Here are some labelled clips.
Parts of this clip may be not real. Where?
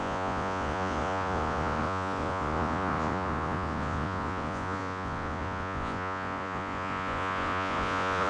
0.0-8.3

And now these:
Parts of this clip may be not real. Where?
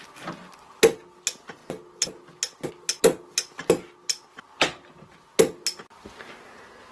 none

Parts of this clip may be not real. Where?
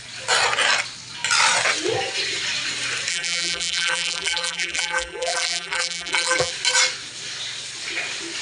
3.1-6.5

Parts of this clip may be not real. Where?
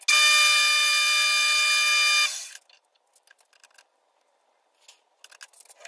none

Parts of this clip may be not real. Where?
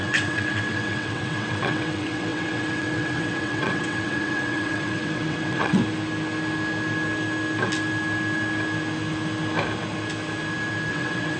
0.0-5.8; 10.9-11.4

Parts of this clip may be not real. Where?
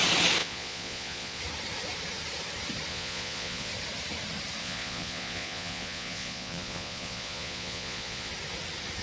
0.4-1.4; 2.9-3.7; 4.6-8.3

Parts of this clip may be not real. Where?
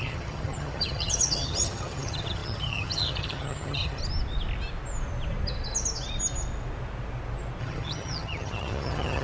0.0-4.0; 7.6-9.2